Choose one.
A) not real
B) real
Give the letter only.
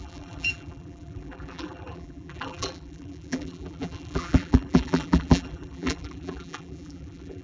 A